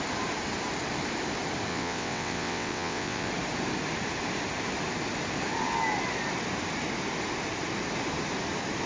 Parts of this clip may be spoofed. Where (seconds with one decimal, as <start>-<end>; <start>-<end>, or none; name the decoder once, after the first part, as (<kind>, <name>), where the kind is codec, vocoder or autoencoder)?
1.7-3.3 (vocoder, WaveNeXt)